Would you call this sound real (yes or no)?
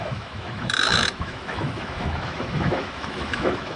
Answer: no